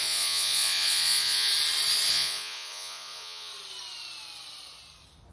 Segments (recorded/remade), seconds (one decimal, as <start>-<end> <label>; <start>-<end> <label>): 0.0-1.5 remade; 1.5-2.1 recorded; 2.1-3.5 remade; 3.5-5.3 recorded